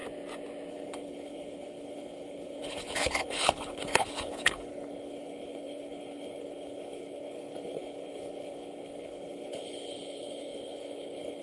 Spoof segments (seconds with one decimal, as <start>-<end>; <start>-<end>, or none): 0.7-11.4